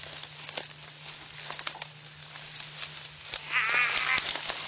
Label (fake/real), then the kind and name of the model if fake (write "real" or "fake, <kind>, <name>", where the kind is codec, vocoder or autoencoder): real